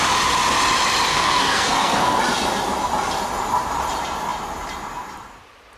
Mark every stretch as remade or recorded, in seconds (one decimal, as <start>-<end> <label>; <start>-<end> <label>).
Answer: 0.0-1.1 recorded; 1.1-2.2 remade; 2.2-5.8 recorded